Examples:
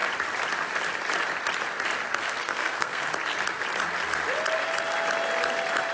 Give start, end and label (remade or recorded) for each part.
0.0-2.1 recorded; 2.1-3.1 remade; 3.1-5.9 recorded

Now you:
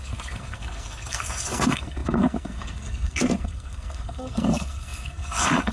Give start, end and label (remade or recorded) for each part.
0.0-5.7 remade

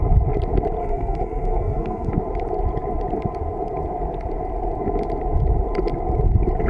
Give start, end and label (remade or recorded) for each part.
0.0-0.8 recorded; 0.8-2.1 remade; 2.1-6.7 recorded

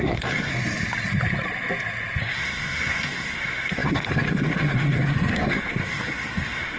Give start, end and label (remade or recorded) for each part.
0.0-0.5 remade; 0.5-2.2 recorded; 2.2-6.8 remade

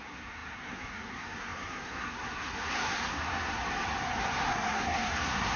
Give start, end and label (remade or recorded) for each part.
0.0-3.6 remade; 3.6-4.2 recorded; 4.2-5.6 remade

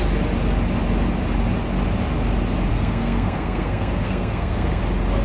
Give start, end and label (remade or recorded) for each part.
0.0-2.7 recorded; 2.7-4.8 remade; 4.8-5.2 recorded